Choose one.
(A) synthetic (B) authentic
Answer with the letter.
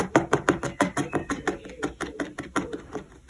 B